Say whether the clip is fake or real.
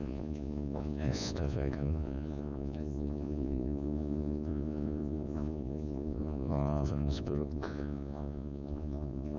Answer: fake